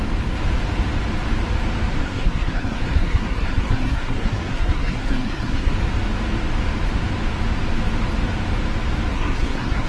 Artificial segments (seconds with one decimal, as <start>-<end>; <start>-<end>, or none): 2.0-5.7; 9.1-9.9